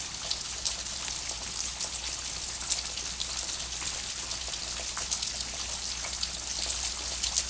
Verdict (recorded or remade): recorded